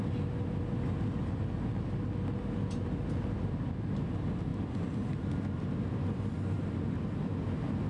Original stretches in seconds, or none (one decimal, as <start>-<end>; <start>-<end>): 0.0-4.5; 5.7-7.9